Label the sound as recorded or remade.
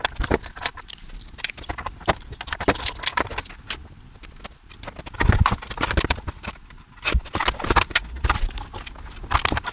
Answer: recorded